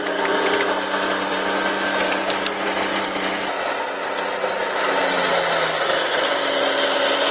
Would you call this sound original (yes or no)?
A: yes